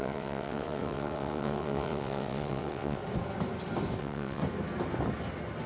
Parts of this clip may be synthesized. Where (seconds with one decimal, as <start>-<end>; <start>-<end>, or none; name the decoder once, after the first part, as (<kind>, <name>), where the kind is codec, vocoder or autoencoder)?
0.0-3.0 (vocoder, WaveNeXt); 4.0-4.4